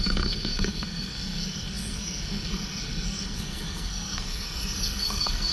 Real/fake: fake